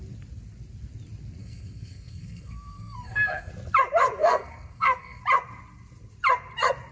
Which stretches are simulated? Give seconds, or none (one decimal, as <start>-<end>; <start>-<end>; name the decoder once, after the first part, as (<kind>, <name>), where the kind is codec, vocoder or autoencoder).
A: 1.4-3.5 (codec, SNAC); 4.2-5.2

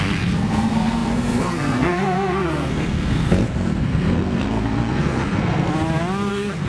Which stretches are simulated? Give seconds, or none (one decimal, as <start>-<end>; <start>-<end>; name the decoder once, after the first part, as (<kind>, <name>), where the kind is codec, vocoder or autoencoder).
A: 0.0-5.7 (codec, SNAC); 6.3-6.7

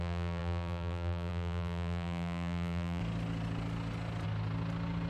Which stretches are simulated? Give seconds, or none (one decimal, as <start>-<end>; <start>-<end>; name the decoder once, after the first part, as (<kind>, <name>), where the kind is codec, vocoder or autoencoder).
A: 0.0-3.0 (vocoder, BigVGAN v2)

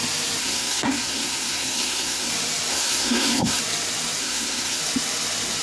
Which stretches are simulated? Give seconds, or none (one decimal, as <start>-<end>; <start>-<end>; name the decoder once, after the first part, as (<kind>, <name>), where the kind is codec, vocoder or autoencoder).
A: 0.4-2.3 (codec, SNAC); 2.7-3.6; 4.2-4.8